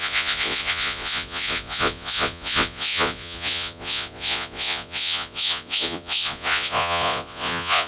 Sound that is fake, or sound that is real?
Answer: fake